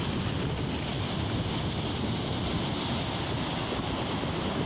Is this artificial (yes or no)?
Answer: no